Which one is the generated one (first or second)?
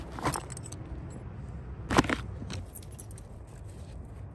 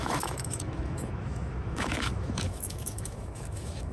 second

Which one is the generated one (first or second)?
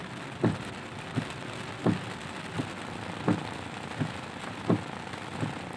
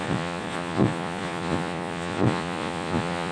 second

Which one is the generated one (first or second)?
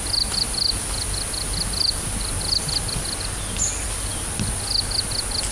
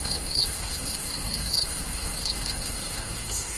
second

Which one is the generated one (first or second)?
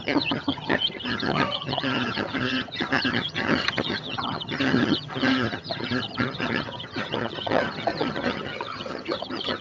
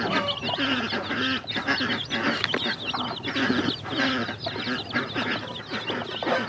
first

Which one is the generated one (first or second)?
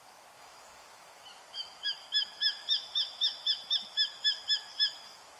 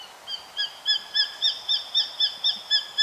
first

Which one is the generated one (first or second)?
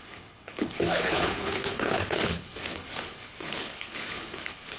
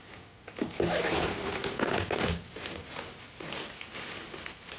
first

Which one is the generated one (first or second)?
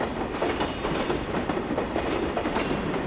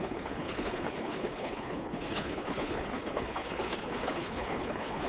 second